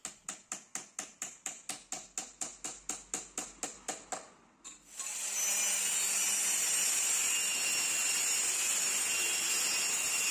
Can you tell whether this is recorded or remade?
recorded